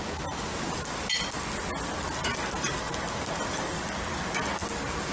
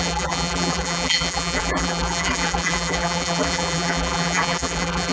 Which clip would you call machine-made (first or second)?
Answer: second